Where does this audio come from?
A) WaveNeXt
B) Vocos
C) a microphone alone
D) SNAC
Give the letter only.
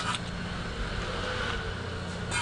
C